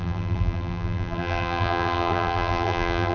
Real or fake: fake